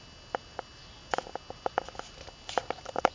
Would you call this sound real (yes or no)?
yes